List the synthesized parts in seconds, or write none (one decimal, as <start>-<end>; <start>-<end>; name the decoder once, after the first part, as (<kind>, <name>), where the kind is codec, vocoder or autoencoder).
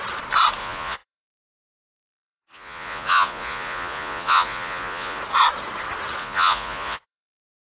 0.6-5.2 (vocoder, Vocos); 6.2-7.6